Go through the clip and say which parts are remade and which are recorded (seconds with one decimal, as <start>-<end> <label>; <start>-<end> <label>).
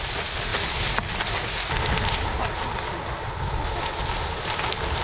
0.0-5.0 recorded